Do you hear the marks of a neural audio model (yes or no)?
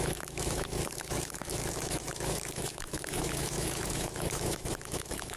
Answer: yes